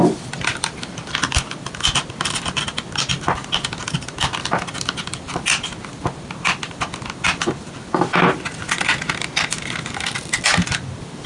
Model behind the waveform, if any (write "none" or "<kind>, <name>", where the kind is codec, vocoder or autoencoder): none